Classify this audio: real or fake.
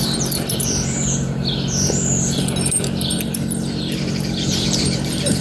fake